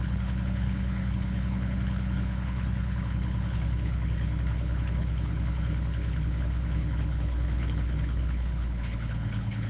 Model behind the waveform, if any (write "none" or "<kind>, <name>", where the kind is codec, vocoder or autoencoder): codec, HILCodec